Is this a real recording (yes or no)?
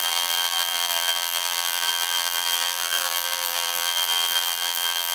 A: no